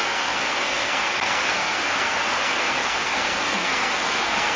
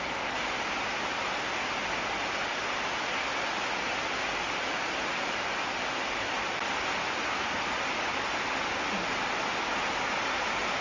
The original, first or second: second